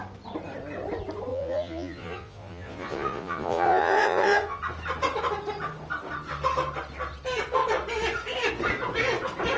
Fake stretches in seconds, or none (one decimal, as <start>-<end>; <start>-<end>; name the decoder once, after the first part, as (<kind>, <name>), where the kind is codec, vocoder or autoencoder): 1.3-4.6 (vocoder, Vocos)